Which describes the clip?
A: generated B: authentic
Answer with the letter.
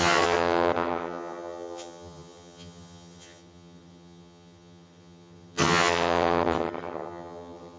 A